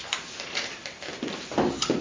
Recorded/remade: recorded